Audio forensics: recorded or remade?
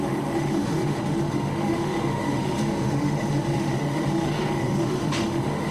remade